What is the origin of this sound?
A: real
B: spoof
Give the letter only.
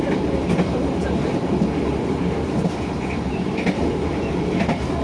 B